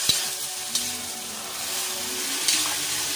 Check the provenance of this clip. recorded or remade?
recorded